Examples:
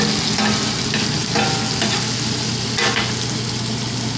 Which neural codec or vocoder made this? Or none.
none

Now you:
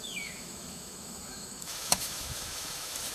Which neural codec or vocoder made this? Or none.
autoencoder, DAC-VAE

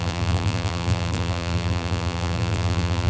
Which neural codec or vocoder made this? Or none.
vocoder, BigVGAN v2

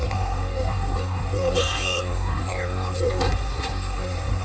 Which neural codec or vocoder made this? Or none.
codec, SNAC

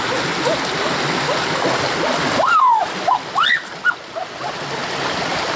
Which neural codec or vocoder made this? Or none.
none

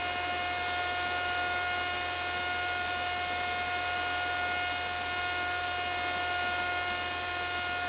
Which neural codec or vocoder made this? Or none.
none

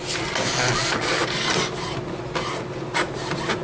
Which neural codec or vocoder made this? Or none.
none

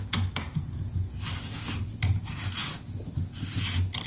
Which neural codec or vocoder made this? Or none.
none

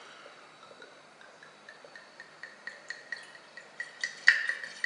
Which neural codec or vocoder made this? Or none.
none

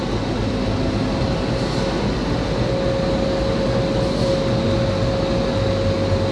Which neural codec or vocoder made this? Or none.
none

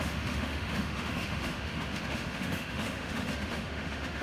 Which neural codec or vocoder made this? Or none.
autoencoder, DAC-VAE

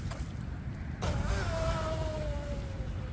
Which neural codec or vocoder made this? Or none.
none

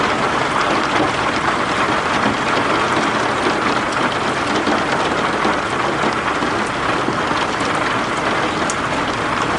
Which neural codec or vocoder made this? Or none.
none